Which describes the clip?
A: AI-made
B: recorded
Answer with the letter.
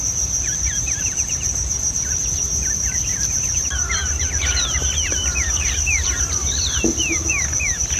A